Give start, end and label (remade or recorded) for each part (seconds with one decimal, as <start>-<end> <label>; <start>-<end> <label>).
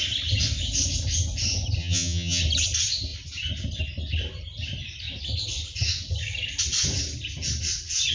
0.0-1.8 recorded; 1.8-2.4 remade; 2.4-8.1 recorded